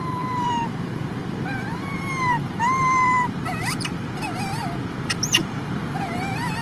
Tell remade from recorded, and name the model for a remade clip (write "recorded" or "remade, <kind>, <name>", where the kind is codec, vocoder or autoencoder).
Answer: remade, vocoder, BigVGAN v2